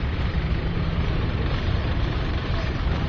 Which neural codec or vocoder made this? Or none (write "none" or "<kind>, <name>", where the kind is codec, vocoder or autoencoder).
vocoder, BigVGAN v2